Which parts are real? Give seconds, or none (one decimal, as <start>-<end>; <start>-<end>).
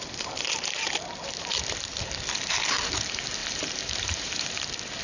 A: 0.0-3.4; 4.6-5.0